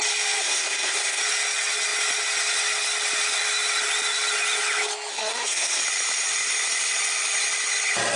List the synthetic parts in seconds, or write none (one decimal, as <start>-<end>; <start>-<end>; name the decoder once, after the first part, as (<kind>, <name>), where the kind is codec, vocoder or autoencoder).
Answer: 0.4-1.2 (codec, SNAC); 5.1-5.8